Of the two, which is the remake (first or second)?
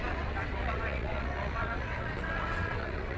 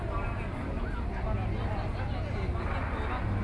first